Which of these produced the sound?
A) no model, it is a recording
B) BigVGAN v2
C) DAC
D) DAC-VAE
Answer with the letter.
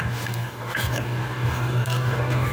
C